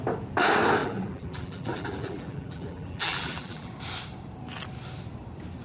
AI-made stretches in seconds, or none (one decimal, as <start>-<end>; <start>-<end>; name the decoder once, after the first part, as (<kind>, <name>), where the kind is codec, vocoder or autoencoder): 0.8-3.7 (vocoder, BigVGAN v2)

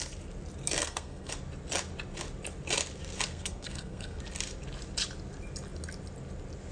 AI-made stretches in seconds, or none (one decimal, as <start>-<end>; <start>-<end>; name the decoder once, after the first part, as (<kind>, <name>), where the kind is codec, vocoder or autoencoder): 0.8-1.3 (codec, SNAC); 3.3-4.2

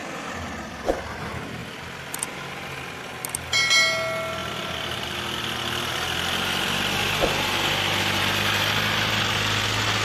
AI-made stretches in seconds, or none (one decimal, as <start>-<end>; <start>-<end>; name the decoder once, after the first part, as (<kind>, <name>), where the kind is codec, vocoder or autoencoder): none

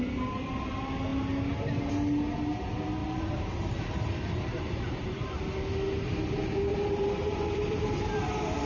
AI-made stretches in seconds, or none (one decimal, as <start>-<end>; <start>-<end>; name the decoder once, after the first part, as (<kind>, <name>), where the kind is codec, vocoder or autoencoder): 3.0-5.4 (vocoder, BigVGAN v2); 6.7-8.1

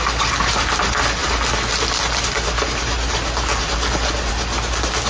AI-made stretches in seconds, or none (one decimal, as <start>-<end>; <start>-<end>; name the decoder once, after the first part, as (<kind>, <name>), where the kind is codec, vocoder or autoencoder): none

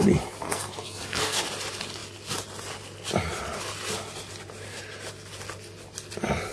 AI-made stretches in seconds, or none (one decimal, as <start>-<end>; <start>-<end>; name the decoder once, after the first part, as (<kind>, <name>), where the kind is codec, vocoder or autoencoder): 0.4-1.4 (codec, SNAC)